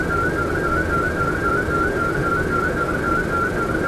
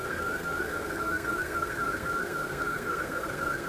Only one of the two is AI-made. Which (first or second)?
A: second